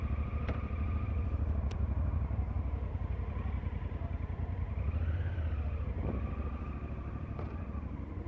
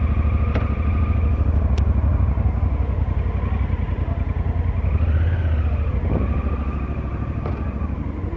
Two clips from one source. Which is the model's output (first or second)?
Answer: first